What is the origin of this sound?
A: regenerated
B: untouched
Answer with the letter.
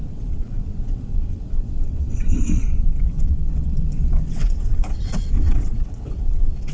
A